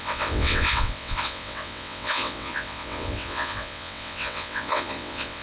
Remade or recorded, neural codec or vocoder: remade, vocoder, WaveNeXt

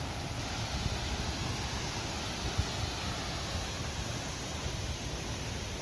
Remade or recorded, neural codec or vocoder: recorded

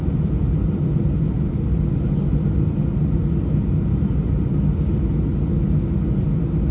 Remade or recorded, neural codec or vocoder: recorded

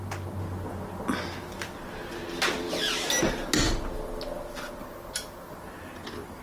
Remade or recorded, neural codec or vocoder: recorded